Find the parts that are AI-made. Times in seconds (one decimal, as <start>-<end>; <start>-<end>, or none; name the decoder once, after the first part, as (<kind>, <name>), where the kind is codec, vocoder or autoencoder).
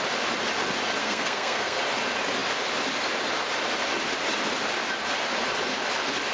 1.0-1.8 (codec, SNAC)